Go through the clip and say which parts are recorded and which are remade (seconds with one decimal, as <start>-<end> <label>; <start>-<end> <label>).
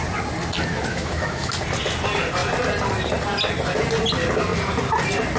0.0-0.9 recorded; 0.9-1.5 remade; 1.5-5.4 recorded